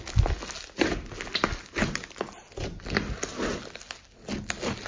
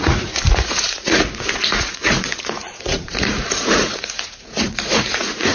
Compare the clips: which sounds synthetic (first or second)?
second